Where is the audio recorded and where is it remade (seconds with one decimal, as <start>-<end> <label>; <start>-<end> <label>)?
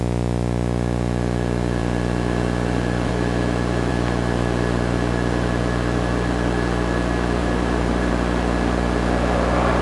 0.0-7.4 recorded; 7.4-8.1 remade; 8.1-9.8 recorded